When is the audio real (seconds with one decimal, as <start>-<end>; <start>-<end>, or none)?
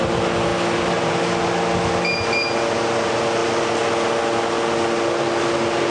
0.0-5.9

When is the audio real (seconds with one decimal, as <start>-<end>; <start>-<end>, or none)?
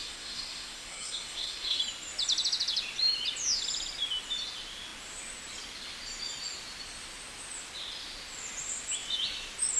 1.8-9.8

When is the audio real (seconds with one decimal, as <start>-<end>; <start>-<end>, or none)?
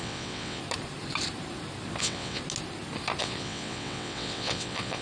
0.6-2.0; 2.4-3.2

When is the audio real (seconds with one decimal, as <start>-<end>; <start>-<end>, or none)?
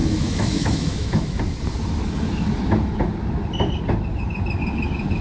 1.4-5.2